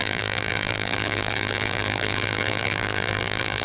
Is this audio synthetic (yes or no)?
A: yes